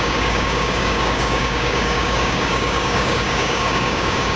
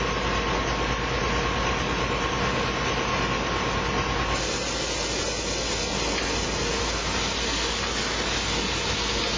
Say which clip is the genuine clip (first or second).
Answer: second